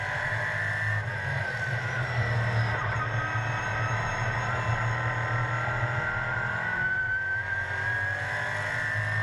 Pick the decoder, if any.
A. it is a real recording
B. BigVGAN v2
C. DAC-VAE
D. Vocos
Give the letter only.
A